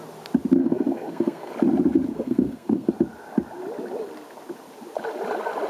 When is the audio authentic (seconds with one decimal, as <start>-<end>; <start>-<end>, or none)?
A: 0.0-0.6; 1.5-2.1; 2.9-5.7